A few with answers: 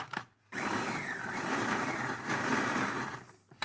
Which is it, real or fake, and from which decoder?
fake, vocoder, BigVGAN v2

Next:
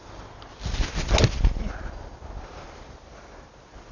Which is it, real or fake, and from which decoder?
real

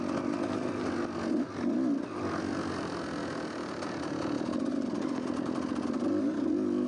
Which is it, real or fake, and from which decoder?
real